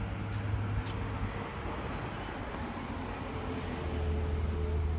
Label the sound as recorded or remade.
recorded